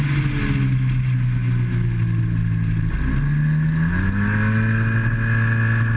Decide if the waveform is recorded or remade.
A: recorded